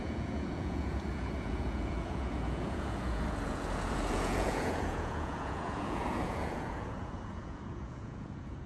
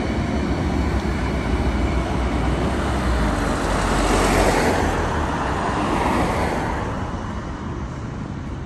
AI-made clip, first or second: first